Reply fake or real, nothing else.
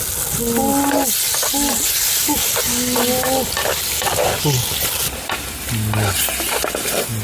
real